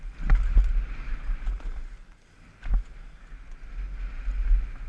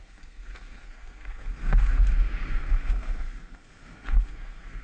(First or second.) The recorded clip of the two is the first